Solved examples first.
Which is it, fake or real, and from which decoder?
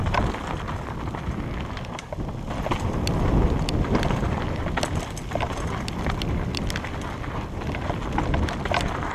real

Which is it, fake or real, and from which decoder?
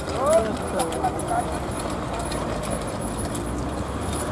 real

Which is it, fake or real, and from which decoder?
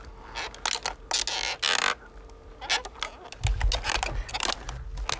real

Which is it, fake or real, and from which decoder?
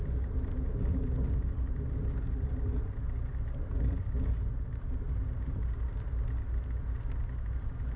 real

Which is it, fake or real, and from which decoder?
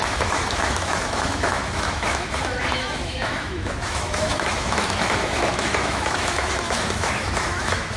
fake, autoencoder, DAC-VAE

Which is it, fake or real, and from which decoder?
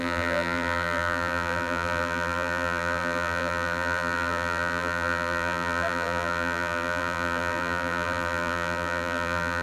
fake, vocoder, BigVGAN v2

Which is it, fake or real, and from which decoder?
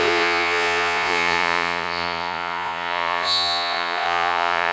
fake, vocoder, Vocos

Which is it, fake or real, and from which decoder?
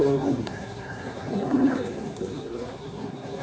fake, codec, SNAC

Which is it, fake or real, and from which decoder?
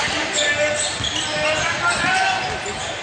real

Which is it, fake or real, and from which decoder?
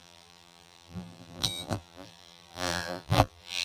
fake, vocoder, BigVGAN v2